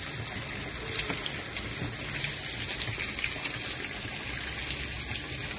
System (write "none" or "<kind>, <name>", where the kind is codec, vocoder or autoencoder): none